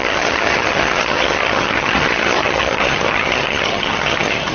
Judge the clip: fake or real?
fake